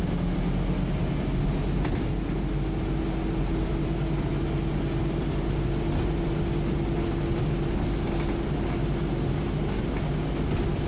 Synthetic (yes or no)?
no